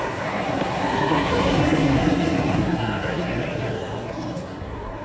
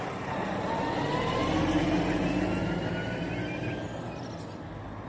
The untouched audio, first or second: second